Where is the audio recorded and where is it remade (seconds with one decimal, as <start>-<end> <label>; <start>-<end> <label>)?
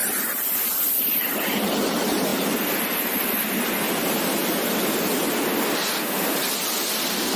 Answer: 0.0-7.4 recorded